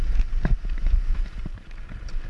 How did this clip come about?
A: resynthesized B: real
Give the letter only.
A